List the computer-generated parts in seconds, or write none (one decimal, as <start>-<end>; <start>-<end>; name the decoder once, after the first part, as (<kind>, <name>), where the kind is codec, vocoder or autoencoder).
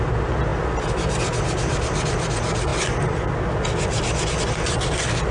none